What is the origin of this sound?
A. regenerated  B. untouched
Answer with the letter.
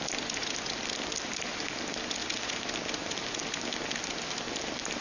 B